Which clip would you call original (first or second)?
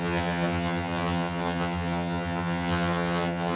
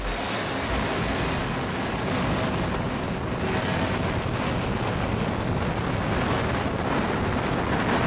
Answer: second